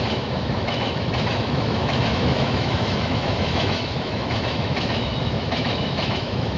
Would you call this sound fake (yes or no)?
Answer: yes